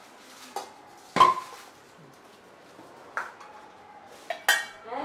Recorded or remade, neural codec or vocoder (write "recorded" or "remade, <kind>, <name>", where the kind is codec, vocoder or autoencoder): recorded